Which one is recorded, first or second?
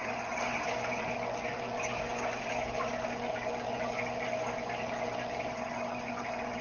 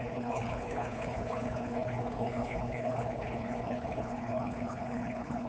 first